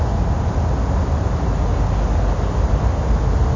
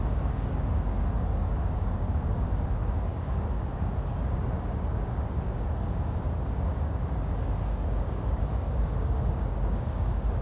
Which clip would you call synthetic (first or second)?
second